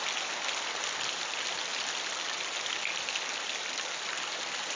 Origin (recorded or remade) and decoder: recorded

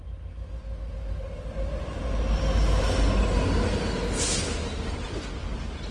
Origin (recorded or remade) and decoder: recorded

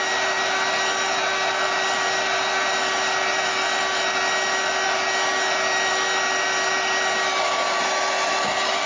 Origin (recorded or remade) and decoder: recorded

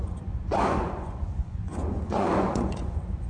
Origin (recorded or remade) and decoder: remade, vocoder, Vocos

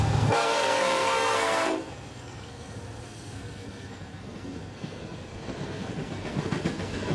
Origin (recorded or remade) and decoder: remade, codec, SNAC